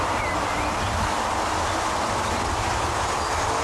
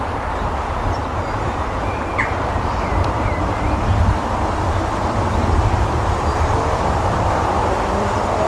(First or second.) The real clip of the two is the first